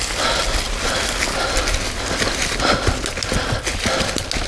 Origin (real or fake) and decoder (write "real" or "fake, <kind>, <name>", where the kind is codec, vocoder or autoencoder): real